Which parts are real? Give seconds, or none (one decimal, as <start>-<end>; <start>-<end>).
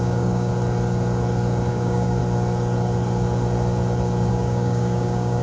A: 0.5-1.7; 2.2-4.3